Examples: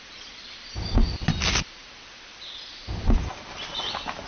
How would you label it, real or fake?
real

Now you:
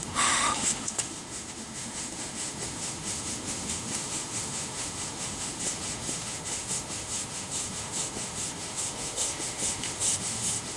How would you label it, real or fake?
fake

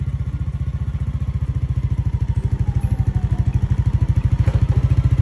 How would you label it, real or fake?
real